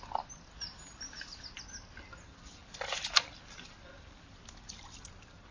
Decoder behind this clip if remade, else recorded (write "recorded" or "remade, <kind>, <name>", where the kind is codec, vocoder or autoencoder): recorded